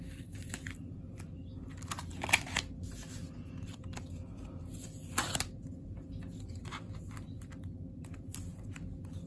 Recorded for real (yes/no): yes